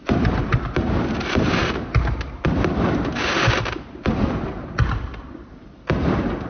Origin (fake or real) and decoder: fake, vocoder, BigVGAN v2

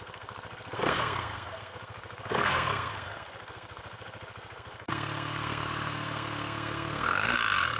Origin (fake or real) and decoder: fake, codec, SNAC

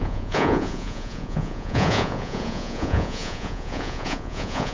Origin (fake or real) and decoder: fake, vocoder, Vocos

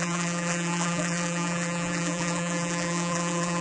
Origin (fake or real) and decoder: fake, vocoder, BigVGAN v2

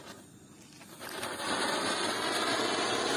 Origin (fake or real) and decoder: real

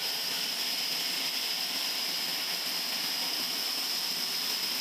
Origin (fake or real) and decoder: real